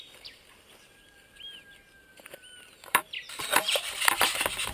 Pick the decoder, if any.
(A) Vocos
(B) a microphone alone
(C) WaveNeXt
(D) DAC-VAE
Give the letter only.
B